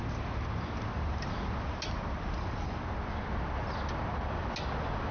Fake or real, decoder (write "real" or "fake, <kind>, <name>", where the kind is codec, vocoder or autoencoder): real